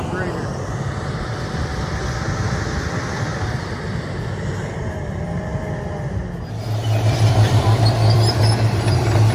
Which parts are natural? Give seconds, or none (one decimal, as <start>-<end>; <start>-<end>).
5.5-7.0